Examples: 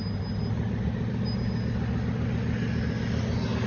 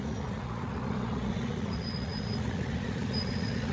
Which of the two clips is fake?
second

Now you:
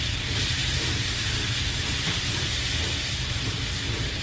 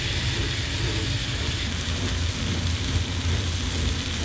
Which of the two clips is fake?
first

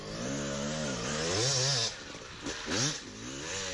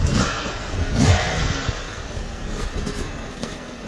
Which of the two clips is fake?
second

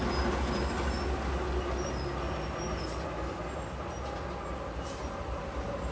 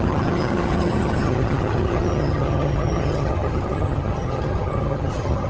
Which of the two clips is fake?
second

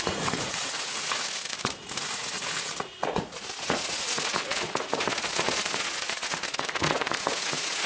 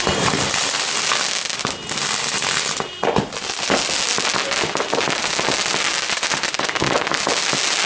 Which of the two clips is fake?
first